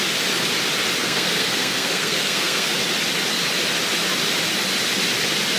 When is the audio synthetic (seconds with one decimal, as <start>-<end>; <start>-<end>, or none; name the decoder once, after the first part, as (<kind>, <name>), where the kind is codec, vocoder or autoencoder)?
1.0-2.7 (codec, SNAC)